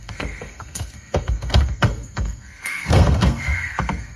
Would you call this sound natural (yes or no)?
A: no